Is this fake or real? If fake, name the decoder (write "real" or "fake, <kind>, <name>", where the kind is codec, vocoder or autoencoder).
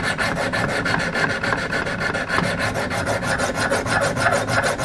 real